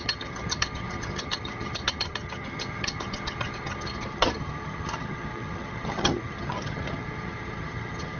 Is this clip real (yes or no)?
no